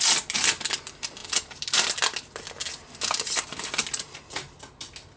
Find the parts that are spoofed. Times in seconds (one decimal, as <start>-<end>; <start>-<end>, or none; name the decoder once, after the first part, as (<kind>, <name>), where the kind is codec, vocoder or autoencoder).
none